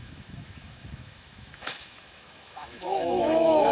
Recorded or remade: remade